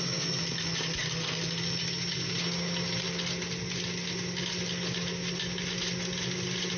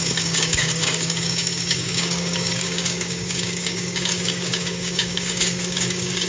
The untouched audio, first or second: first